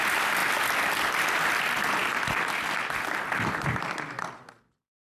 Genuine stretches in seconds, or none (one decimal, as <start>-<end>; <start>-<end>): 0.0-5.0